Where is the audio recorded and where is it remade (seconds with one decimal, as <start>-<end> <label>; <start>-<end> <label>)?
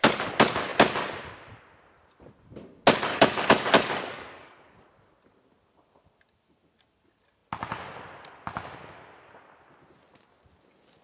0.0-3.1 recorded; 3.1-4.8 remade; 4.8-11.0 recorded